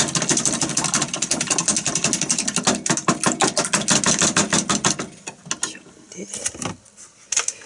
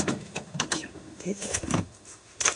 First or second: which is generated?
second